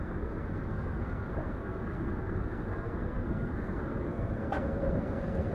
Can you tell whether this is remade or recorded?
remade